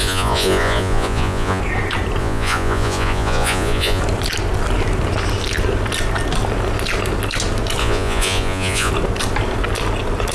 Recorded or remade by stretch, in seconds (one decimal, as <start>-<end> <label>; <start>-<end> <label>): 0.0-1.6 remade; 1.6-2.2 recorded; 2.2-4.0 remade; 4.0-7.8 recorded; 7.8-8.9 remade; 8.9-10.3 recorded

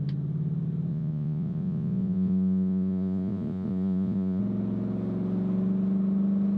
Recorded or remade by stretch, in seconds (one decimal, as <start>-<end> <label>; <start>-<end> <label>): 0.0-0.9 recorded; 0.9-4.4 remade; 4.4-6.6 recorded

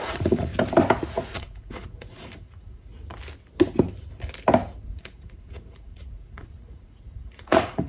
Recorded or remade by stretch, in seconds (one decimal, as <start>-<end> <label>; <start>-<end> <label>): 0.0-0.5 remade; 0.5-1.1 recorded; 1.1-2.9 remade; 2.9-4.8 recorded; 4.8-7.9 remade

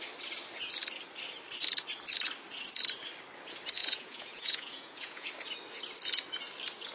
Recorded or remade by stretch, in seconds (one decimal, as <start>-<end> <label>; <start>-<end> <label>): 0.0-3.8 recorded; 3.8-5.3 remade; 5.3-6.9 recorded

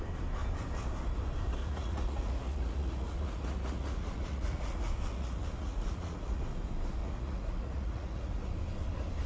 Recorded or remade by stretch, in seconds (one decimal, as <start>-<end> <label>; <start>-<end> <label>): 0.0-1.6 recorded; 1.6-6.4 remade; 6.4-7.0 recorded; 7.0-8.5 remade; 8.5-9.3 recorded

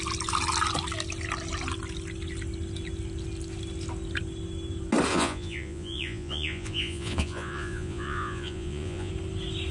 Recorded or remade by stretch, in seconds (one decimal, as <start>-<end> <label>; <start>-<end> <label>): 0.0-5.1 recorded; 5.1-9.1 remade; 9.1-9.7 recorded

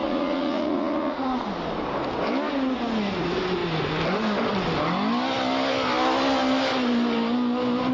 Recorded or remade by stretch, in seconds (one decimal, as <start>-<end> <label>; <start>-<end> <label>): 0.0-1.4 remade; 1.4-7.9 recorded